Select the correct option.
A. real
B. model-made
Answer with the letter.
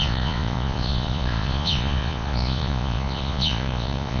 B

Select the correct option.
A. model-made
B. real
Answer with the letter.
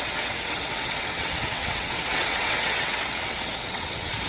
A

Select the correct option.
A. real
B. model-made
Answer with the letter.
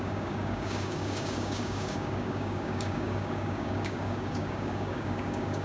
B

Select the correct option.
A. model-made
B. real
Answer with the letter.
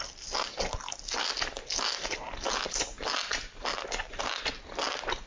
B